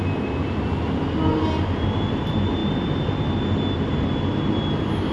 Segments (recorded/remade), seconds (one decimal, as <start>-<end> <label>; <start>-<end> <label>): 0.0-5.1 recorded